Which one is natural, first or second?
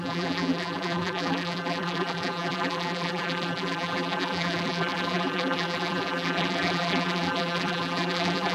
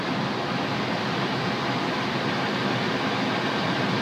second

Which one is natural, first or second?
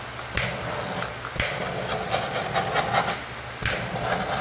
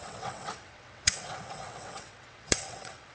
first